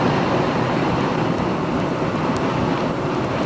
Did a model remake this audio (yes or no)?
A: no